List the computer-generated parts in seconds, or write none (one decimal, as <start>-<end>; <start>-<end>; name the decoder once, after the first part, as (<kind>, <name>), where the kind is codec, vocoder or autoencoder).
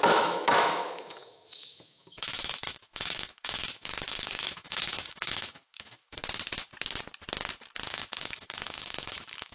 0.0-6.2 (autoencoder, DAC-VAE); 7.9-9.5